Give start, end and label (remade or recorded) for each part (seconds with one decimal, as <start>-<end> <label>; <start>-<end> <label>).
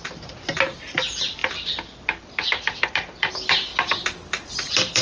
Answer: 0.0-3.7 recorded; 3.7-5.0 remade